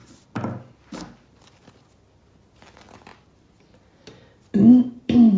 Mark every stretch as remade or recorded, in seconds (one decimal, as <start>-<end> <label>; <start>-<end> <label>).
0.0-5.4 recorded